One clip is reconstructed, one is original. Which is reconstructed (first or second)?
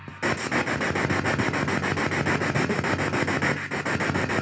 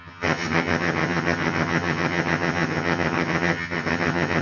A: second